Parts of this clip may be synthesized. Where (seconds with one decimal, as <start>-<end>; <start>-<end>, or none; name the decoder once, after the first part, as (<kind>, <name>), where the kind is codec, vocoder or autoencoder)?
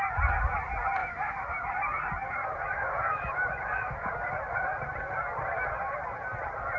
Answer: 1.0-1.7 (autoencoder, DAC-VAE); 2.4-4.1